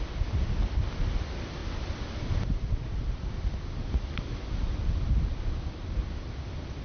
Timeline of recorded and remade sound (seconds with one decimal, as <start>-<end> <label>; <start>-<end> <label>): 0.0-6.8 recorded

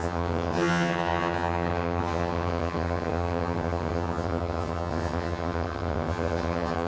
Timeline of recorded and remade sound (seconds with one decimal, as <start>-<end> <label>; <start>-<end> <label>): 0.0-6.9 remade

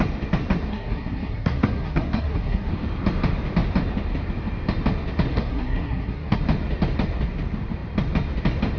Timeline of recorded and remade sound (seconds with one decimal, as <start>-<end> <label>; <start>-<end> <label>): 0.0-0.7 recorded; 0.7-2.7 remade; 2.7-5.3 recorded; 5.3-6.4 remade; 6.4-8.8 recorded

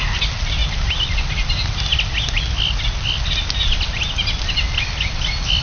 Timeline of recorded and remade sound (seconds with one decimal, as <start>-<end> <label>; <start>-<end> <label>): 0.0-5.6 recorded

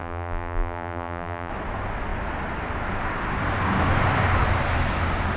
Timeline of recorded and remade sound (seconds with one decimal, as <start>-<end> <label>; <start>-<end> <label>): 0.0-1.5 remade; 1.5-5.4 recorded

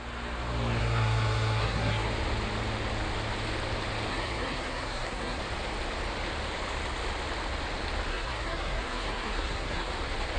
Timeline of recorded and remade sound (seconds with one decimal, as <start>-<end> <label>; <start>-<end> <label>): 0.0-0.8 recorded; 0.8-2.1 remade; 2.1-4.1 recorded; 4.1-5.4 remade; 5.4-8.1 recorded; 8.1-9.9 remade; 9.9-10.4 recorded

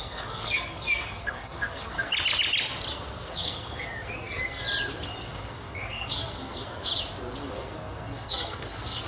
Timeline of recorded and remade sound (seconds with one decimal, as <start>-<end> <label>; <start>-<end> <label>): 0.0-2.1 remade; 2.1-2.9 recorded; 2.9-4.6 remade; 4.6-5.2 recorded; 5.2-6.9 remade; 6.9-7.5 recorded; 7.5-9.1 remade